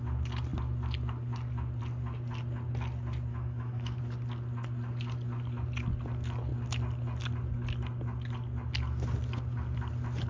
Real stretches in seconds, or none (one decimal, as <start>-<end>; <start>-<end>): 0.0-3.3; 4.0-10.3

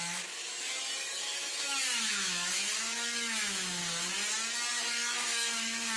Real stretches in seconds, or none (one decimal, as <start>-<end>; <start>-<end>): 3.8-4.7

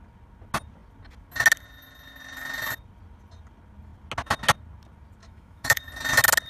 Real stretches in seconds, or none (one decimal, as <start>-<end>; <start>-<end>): 0.0-5.2; 5.8-6.5

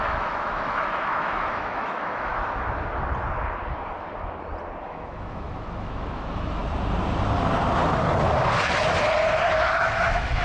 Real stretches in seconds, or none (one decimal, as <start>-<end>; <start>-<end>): 2.3-4.8; 6.6-9.8